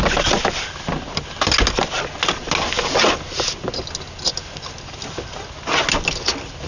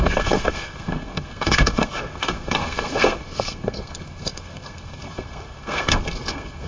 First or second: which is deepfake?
second